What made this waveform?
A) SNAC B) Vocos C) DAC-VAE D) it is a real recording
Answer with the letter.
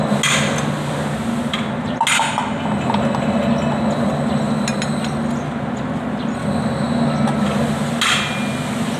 D